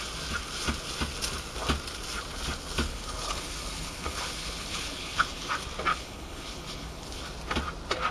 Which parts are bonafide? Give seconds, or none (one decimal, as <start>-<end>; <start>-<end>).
0.0-2.9; 5.5-5.9; 7.2-8.1